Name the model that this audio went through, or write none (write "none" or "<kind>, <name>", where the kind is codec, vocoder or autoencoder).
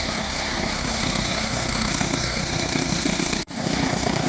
codec, SNAC